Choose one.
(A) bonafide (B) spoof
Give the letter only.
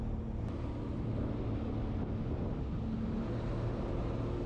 A